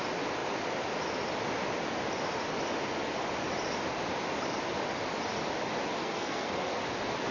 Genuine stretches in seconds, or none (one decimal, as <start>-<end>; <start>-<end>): 0.0-6.0; 6.8-7.3